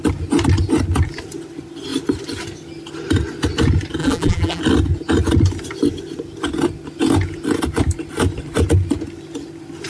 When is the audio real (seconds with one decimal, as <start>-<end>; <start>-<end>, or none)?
0.0-4.0; 4.6-9.9